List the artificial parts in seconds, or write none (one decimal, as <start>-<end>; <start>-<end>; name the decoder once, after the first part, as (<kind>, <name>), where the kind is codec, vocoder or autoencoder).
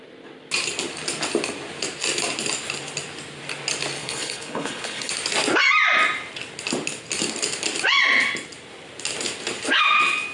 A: 4.0-5.1 (codec, HILCodec)